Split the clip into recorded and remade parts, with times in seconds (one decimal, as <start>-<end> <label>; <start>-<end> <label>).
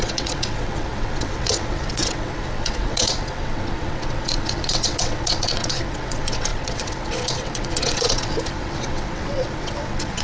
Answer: 0.0-10.2 remade